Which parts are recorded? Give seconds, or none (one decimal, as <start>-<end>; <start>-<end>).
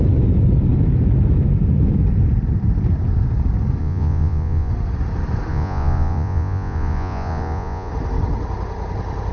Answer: 0.0-3.8; 4.7-5.5; 7.9-9.3